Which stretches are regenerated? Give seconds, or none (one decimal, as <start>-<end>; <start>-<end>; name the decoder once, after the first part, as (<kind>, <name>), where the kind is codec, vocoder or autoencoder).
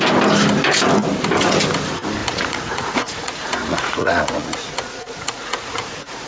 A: 2.2-6.3 (vocoder, Vocos)